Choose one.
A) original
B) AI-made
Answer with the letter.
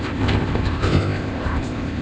B